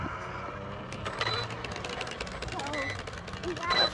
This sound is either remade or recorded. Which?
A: recorded